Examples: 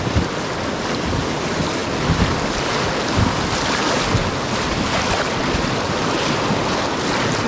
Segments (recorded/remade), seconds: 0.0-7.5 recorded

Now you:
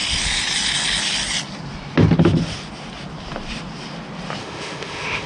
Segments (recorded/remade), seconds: 0.0-4.4 recorded; 4.4-5.3 remade

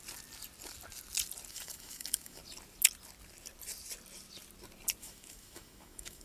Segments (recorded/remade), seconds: 0.0-1.5 recorded; 1.5-2.4 remade; 2.4-5.0 recorded; 5.0-6.2 remade

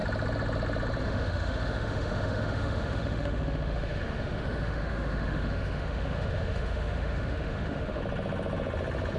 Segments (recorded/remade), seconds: 0.0-1.0 recorded; 1.0-8.0 remade; 8.0-9.2 recorded